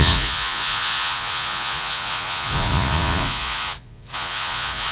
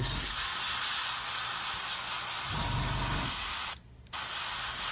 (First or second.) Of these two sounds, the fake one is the first